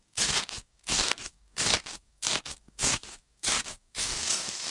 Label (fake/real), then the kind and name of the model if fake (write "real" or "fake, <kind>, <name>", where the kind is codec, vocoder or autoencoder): fake, codec, DAC